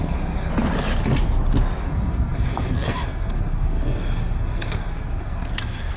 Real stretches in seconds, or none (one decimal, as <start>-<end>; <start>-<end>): 0.5-1.8